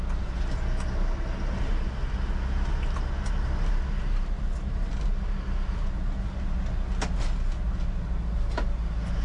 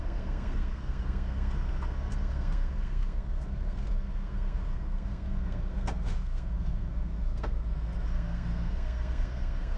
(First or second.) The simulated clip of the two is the second